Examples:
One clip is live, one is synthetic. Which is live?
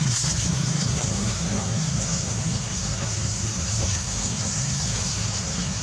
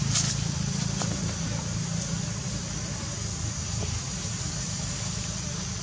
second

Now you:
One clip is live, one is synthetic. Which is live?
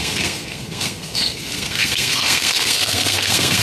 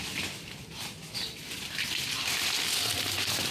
second